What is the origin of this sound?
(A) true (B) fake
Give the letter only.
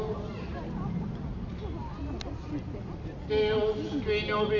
A